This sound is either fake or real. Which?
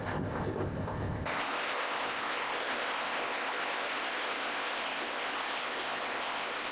fake